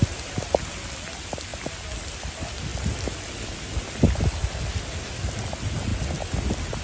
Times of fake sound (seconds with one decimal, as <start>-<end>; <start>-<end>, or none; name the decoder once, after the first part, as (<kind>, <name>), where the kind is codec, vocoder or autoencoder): none